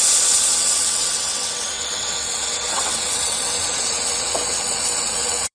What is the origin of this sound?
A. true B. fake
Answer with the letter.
B